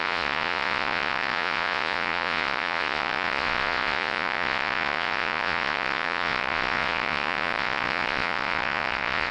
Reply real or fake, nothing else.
fake